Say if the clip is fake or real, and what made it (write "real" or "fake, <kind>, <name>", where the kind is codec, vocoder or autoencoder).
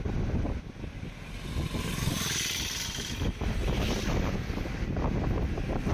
real